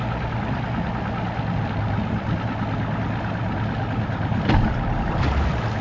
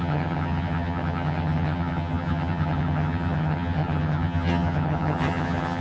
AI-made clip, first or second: second